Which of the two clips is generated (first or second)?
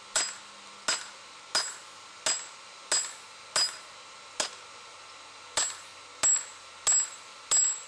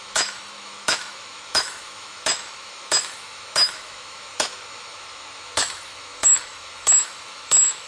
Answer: second